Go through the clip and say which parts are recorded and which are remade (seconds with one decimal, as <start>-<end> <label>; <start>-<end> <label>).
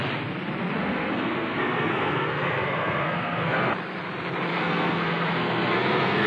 0.0-0.8 recorded; 0.8-3.7 remade; 3.7-4.5 recorded; 4.5-6.3 remade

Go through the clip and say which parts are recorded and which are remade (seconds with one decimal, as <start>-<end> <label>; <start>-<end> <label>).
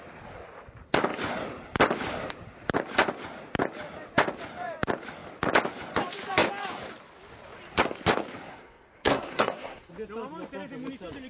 0.0-8.5 recorded; 8.5-9.9 remade; 9.9-11.3 recorded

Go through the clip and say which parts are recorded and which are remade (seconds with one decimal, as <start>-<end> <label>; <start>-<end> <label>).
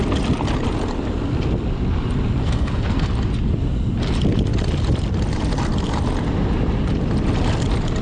0.0-2.4 recorded; 2.4-3.1 remade; 3.1-8.0 recorded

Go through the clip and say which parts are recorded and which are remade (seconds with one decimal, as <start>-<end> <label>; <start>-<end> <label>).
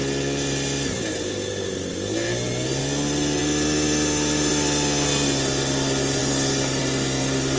0.0-7.6 recorded